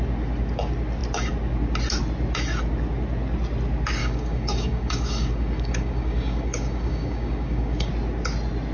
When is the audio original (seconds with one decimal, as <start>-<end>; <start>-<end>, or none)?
0.0-4.0; 7.9-8.7